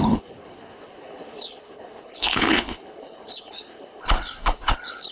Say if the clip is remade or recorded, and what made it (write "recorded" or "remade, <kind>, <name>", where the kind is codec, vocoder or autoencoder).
remade, codec, HILCodec